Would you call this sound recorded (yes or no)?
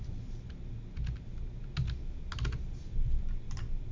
yes